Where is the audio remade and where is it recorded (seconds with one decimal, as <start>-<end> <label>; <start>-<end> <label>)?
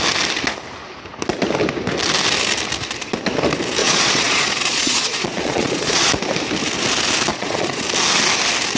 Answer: 0.0-3.8 recorded; 3.8-6.1 remade; 6.1-7.3 recorded; 7.3-7.8 remade; 7.8-8.8 recorded